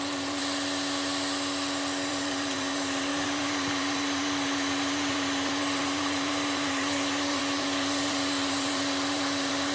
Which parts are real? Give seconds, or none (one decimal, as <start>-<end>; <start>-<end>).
0.4-2.1